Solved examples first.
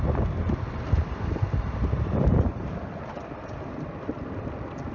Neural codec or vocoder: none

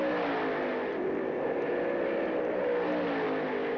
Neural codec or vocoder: none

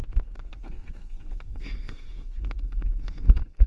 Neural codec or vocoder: codec, SNAC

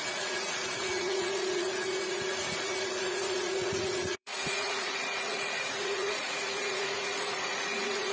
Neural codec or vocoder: vocoder, Vocos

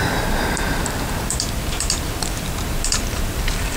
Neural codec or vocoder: vocoder, BigVGAN v2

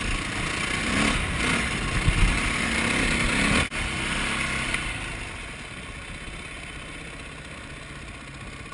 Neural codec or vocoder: none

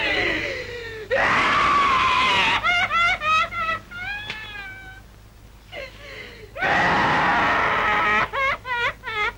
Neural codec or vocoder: none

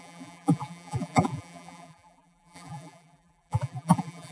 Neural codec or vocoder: vocoder, BigVGAN v2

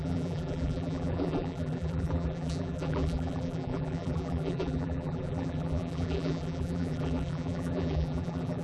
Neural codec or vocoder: vocoder, BigVGAN v2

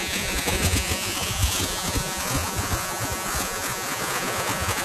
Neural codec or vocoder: vocoder, Vocos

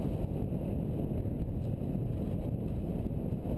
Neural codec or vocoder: none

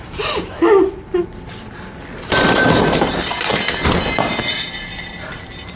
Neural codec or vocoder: none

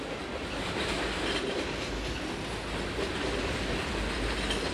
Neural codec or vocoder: none